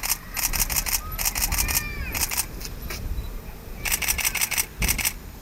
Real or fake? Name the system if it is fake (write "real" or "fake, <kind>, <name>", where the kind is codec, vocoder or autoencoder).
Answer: real